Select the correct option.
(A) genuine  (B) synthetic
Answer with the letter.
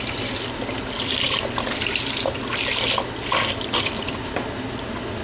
A